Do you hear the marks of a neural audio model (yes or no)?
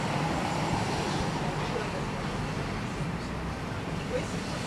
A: no